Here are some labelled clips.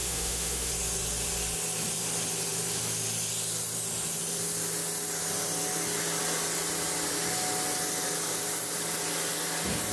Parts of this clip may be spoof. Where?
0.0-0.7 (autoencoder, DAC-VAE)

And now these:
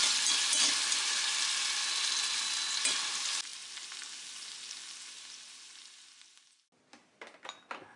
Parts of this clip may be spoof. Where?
none

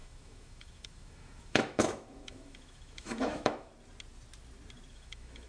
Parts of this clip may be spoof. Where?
0.0-3.7 (autoencoder, DAC-VAE); 4.9-5.5

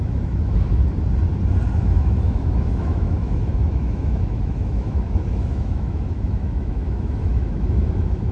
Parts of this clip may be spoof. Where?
0.0-0.8 (autoencoder, DAC-VAE); 1.7-8.3

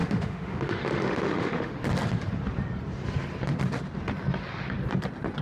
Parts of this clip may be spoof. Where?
0.0-1.7 (autoencoder, DAC-VAE)

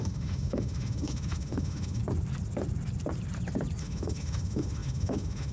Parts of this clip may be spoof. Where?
0.0-2.0 (autoencoder, DAC-VAE); 3.8-5.5

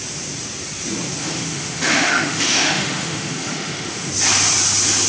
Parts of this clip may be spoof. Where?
1.2-4.1 (autoencoder, DAC-VAE)